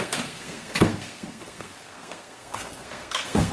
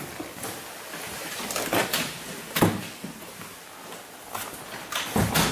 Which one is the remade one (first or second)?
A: first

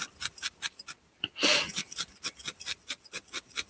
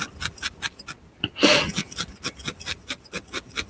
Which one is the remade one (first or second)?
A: first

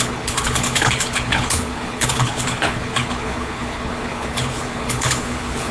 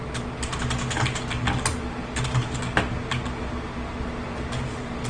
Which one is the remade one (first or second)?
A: first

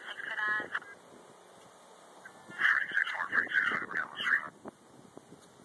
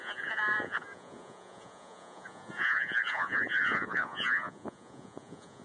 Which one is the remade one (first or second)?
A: second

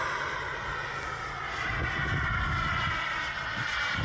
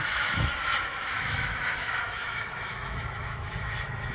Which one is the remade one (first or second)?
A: second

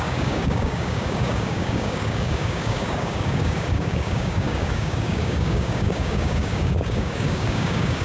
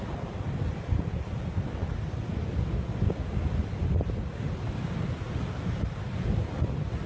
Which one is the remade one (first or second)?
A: first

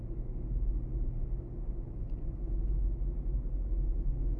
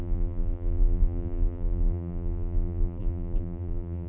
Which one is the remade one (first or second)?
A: second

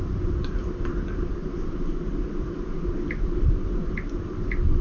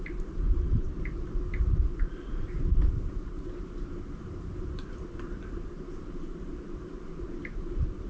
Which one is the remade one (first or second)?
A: second